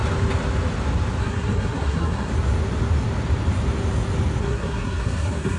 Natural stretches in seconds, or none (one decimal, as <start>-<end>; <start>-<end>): 0.0-1.2; 2.3-4.4